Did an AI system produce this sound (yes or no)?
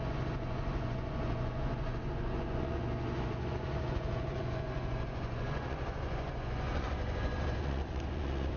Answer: yes